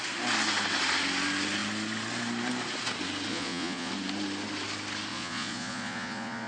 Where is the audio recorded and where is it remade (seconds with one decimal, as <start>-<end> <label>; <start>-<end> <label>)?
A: 0.0-3.3 recorded; 3.3-3.9 remade; 3.9-5.1 recorded; 5.1-6.5 remade